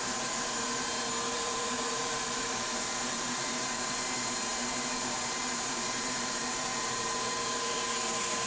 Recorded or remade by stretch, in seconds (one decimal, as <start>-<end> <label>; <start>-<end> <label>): 0.0-8.5 remade